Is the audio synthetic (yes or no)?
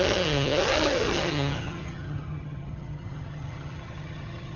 yes